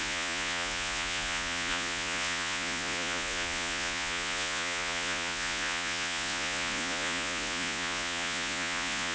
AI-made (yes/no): yes